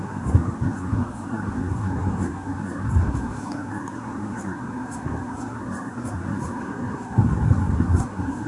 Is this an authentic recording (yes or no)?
no